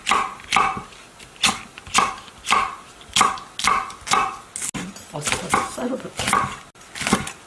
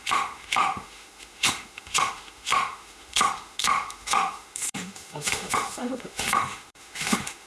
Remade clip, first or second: second